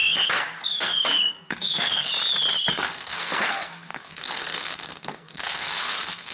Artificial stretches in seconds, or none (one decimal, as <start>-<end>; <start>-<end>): 0.0-2.1; 2.7-6.3